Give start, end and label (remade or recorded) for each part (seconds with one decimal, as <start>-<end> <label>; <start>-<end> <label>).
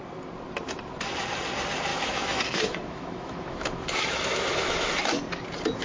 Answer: 0.0-1.9 recorded; 1.9-4.9 remade; 4.9-5.8 recorded